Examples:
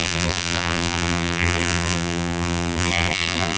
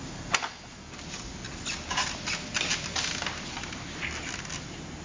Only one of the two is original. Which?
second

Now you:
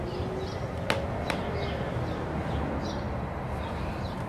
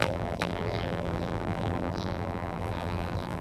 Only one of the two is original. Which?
first